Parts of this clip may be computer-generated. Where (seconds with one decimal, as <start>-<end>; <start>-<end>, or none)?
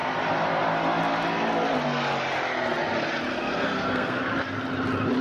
3.3-4.2